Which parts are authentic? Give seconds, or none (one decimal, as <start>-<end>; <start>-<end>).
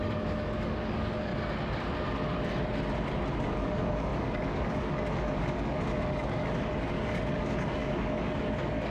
1.3-3.4